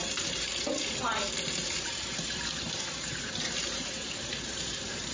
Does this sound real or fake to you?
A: fake